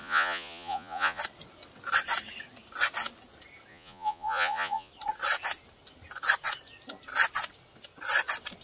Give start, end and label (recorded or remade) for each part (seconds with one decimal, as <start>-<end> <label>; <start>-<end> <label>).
0.0-1.2 remade; 1.2-3.7 recorded; 3.7-4.9 remade; 4.9-8.6 recorded